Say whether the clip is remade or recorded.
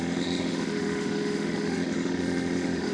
remade